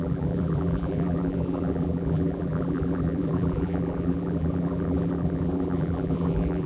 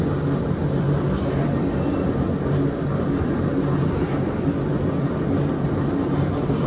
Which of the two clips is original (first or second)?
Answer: second